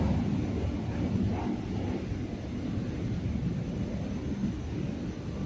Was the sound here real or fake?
real